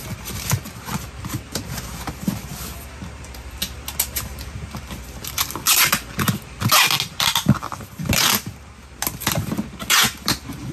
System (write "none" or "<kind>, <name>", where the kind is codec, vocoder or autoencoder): none